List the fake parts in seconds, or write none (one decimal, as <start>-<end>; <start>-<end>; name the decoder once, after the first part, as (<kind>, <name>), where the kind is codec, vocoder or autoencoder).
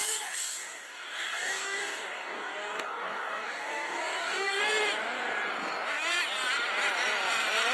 0.0-4.6 (codec, DAC)